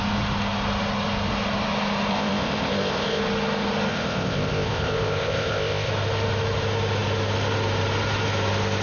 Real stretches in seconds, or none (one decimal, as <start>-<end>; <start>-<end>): 0.0-2.1; 3.2-3.9; 5.9-8.8